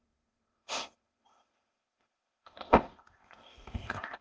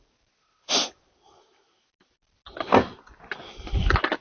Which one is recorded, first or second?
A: second